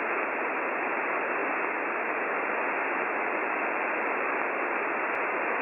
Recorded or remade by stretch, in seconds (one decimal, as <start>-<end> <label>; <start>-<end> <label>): 0.0-3.4 recorded; 3.4-4.4 remade; 4.4-5.6 recorded